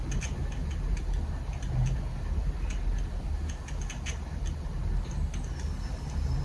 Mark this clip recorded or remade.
recorded